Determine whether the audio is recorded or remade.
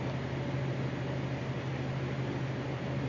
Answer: recorded